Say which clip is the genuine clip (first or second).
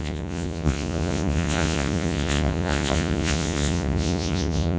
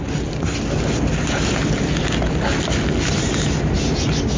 second